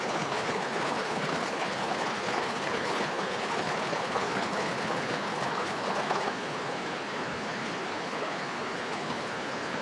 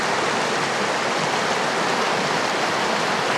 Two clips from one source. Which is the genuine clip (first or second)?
second